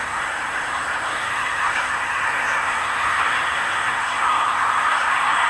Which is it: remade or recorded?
remade